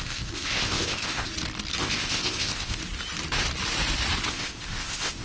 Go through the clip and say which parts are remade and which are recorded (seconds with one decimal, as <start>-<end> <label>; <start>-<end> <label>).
0.0-1.3 remade; 1.3-1.8 recorded; 1.8-2.8 remade; 2.8-4.3 recorded; 4.3-5.2 remade